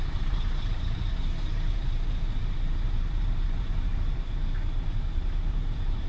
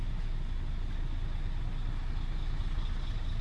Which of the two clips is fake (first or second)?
first